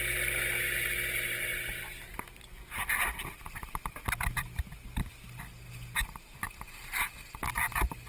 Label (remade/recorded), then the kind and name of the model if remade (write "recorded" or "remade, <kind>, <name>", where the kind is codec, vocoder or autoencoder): recorded